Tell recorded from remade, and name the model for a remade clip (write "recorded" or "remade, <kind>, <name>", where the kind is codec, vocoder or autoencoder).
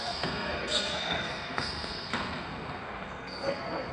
remade, codec, SNAC